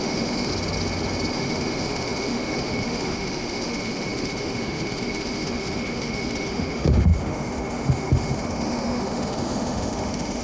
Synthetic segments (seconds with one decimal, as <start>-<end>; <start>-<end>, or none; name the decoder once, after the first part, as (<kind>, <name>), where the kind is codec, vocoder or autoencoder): 0.0-0.5 (autoencoder, DAC-VAE); 1.3-10.4